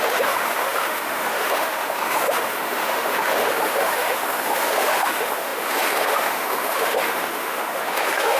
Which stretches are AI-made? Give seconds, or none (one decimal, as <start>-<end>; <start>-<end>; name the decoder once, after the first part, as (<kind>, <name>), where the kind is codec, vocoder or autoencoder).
0.0-8.4 (autoencoder, DAC-VAE)